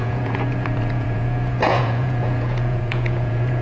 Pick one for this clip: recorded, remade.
remade